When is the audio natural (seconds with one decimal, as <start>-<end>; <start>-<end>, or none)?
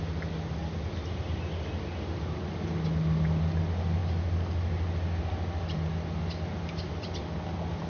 0.0-7.9